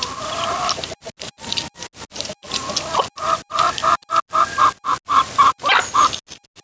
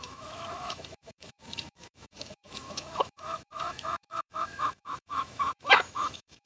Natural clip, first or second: first